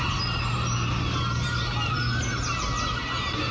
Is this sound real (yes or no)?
yes